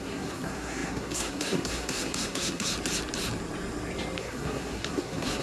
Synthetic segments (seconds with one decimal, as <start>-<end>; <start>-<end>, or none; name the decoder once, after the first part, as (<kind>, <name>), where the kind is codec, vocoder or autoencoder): 0.0-2.7 (codec, SNAC); 4.2-5.4